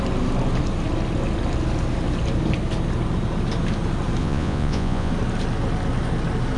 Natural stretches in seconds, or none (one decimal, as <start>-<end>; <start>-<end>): 0.0-4.2; 5.1-6.6